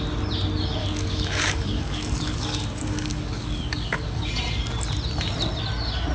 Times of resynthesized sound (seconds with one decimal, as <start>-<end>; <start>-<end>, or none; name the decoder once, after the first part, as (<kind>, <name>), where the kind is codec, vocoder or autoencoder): 0.8-4.3 (codec, DAC)